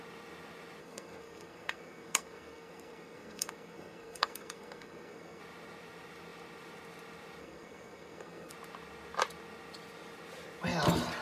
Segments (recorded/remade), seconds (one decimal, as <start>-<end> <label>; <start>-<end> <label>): 0.0-0.8 recorded; 0.8-5.4 remade; 5.4-7.4 recorded; 7.4-8.5 remade; 8.5-11.2 recorded